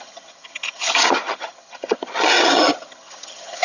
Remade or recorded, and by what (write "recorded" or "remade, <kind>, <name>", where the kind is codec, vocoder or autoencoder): remade, vocoder, HiFi-GAN